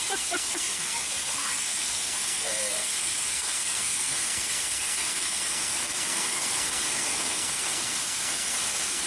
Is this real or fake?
fake